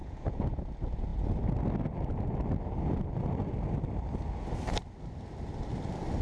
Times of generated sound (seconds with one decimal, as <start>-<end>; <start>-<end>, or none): 0.0-0.5